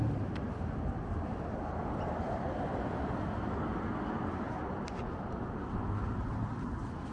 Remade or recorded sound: recorded